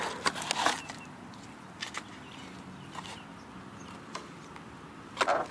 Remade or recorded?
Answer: recorded